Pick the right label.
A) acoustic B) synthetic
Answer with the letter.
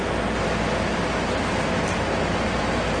A